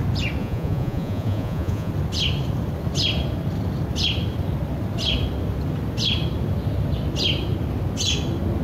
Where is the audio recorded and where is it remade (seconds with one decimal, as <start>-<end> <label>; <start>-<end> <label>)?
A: 0.0-0.4 recorded; 0.4-1.9 remade; 1.9-8.6 recorded